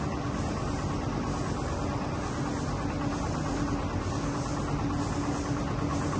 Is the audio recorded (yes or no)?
yes